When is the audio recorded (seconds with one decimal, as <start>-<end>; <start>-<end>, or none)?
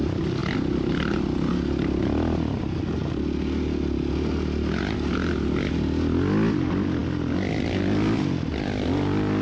0.0-9.4